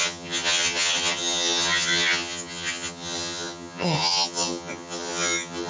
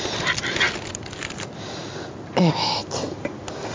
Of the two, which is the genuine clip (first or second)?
second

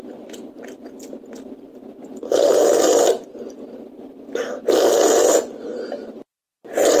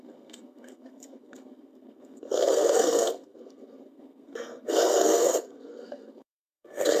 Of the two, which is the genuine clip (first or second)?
first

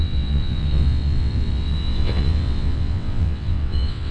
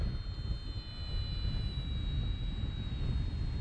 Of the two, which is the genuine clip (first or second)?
second